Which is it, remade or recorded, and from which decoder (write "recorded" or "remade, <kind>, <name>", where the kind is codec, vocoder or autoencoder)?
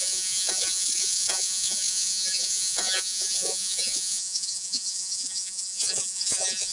remade, vocoder, Vocos